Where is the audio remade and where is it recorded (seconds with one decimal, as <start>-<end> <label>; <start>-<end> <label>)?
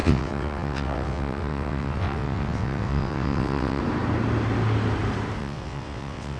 0.0-3.8 remade; 3.8-5.4 recorded; 5.4-6.4 remade